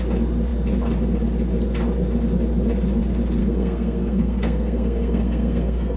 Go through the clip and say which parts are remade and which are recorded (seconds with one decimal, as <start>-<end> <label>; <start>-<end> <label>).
0.0-3.4 recorded; 3.4-6.0 remade